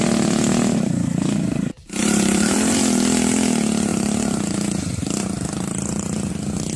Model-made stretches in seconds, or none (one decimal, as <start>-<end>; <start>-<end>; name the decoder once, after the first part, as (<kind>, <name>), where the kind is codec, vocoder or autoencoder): 2.0-2.8 (vocoder, BigVGAN v2); 3.9-6.3